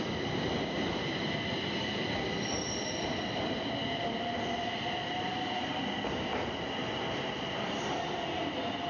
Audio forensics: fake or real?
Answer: real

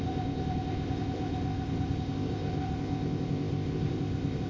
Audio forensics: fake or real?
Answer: fake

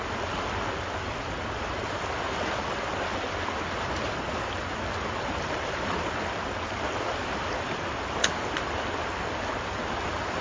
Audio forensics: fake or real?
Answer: real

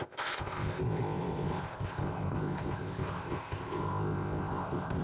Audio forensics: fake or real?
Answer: fake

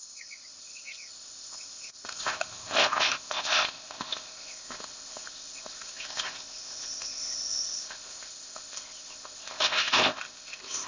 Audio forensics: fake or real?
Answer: fake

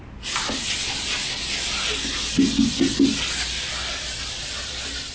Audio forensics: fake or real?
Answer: real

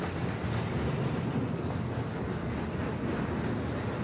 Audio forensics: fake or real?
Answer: real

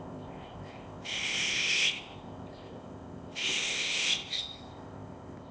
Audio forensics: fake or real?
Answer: fake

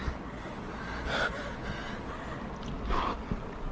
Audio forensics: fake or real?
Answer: real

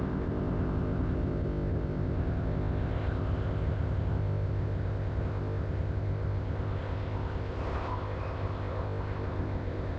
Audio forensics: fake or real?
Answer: fake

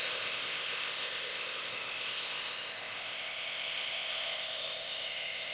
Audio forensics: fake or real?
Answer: fake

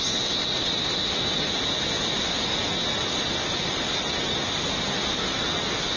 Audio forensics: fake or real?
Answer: real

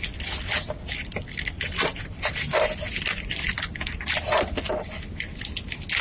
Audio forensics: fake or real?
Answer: real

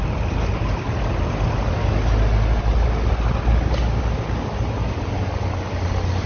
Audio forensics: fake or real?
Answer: real